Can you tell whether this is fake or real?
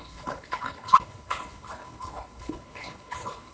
fake